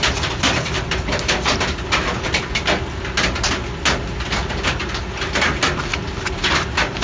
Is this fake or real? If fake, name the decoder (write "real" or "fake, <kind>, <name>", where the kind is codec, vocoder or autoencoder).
real